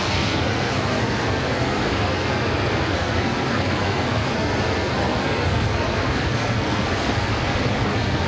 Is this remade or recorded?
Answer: remade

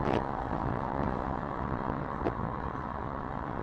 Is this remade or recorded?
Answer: remade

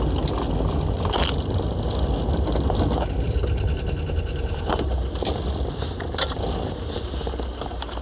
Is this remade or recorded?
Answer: recorded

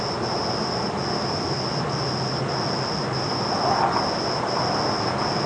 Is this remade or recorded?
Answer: recorded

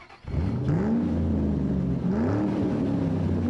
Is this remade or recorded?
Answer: recorded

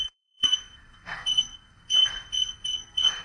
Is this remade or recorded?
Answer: remade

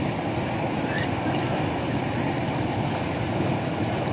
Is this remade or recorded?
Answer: recorded